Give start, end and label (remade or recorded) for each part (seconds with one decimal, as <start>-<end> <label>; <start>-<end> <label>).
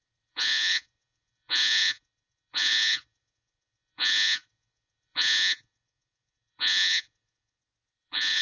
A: 0.0-8.4 remade